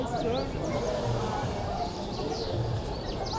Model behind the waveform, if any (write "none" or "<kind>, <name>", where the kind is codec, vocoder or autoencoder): none